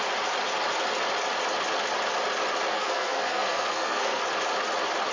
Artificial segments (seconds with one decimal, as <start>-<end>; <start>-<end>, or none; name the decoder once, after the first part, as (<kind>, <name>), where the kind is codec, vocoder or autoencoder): 2.7-4.2 (codec, SNAC)